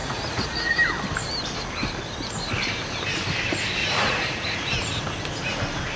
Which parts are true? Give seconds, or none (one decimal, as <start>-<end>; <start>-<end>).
0.7-3.8; 4.7-6.0